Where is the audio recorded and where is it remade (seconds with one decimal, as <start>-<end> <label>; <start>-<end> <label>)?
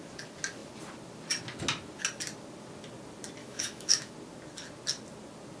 0.0-3.4 recorded; 3.4-4.1 remade; 4.1-5.6 recorded